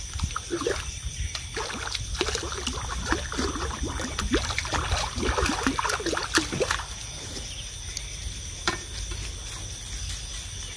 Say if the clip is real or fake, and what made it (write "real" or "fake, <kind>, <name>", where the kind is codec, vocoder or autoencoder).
real